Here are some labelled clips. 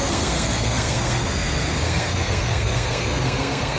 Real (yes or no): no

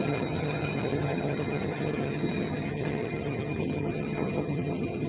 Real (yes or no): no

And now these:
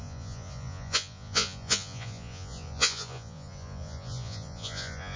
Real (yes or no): no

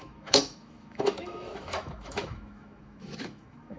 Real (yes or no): no